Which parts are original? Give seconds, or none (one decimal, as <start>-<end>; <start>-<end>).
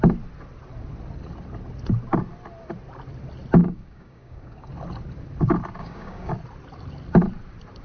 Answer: 0.0-3.6; 4.7-5.8; 6.3-7.8